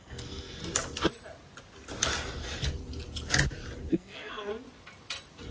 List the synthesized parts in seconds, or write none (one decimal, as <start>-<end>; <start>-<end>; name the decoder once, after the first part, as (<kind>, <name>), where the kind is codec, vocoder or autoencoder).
0.0-0.6 (codec, SNAC); 3.9-4.5